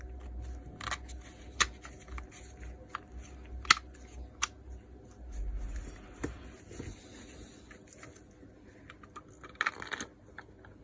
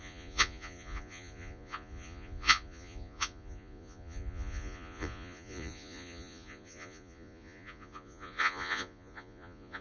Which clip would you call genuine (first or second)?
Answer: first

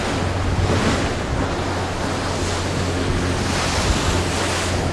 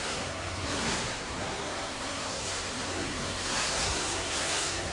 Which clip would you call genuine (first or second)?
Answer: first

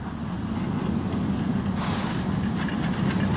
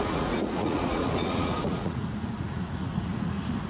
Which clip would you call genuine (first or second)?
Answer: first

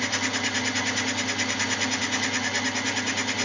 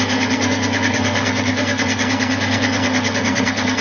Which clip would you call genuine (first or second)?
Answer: first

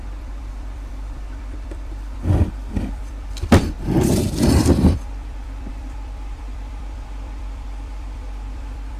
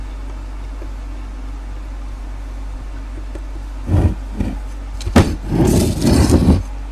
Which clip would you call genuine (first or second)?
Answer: second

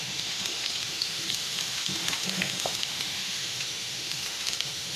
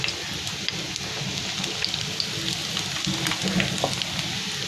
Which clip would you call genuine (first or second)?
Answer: second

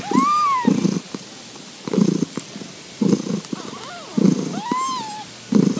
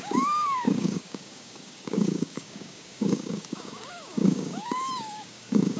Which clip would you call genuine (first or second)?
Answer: first